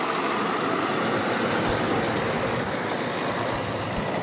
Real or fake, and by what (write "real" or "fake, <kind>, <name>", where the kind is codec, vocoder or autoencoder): real